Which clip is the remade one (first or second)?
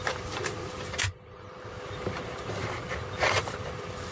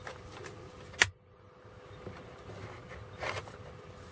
first